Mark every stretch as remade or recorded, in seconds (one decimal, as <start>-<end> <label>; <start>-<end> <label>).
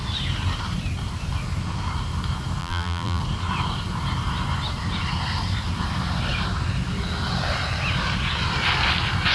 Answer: 0.0-2.6 recorded; 2.6-3.2 remade; 3.2-9.3 recorded